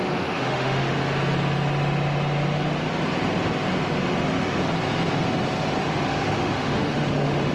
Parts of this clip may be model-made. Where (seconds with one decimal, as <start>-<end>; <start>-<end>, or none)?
0.0-1.0; 4.0-4.6; 5.8-7.5